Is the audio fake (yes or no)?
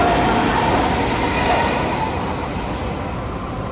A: no